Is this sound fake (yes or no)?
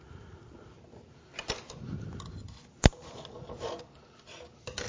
no